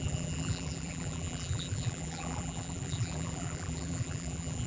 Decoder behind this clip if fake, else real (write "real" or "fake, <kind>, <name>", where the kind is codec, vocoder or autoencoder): fake, vocoder, BigVGAN v2